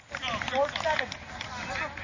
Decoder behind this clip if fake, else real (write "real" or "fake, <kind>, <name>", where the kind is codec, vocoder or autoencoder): real